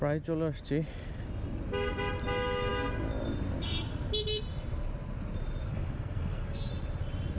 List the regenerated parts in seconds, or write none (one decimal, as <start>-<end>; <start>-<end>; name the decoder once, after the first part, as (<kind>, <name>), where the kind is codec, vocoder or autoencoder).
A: 5.7-6.7 (codec, SNAC)